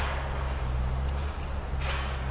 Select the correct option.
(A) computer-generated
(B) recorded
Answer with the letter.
B